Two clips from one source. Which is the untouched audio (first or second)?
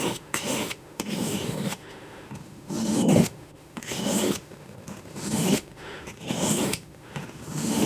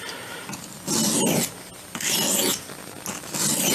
second